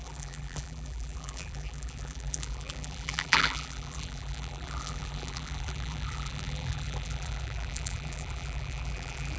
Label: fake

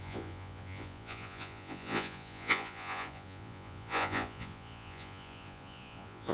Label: fake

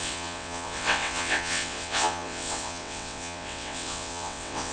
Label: fake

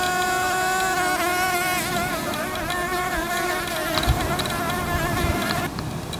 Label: real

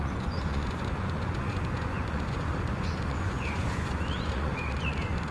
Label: fake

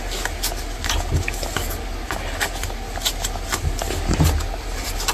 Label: real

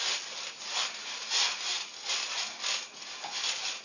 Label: real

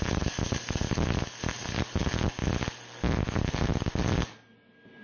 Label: real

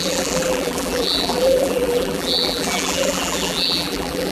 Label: fake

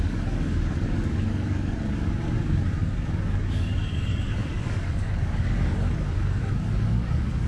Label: fake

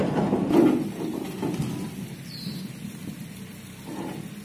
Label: fake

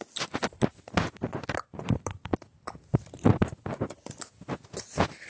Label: real